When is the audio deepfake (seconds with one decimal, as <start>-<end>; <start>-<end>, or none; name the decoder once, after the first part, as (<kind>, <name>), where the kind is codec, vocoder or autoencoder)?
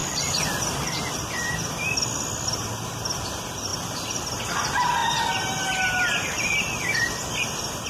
0.0-1.3 (vocoder, BigVGAN v2); 3.7-4.4